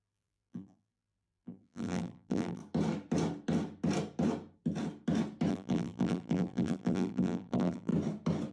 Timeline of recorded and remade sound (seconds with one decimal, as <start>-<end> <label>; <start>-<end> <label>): 0.0-2.6 remade; 2.6-5.5 recorded; 5.5-7.9 remade; 7.9-8.5 recorded

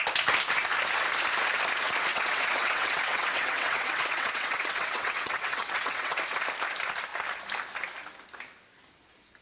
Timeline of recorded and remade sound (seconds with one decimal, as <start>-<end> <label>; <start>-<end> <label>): 0.0-2.1 recorded; 2.1-6.2 remade; 6.2-9.4 recorded